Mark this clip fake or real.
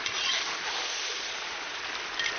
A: real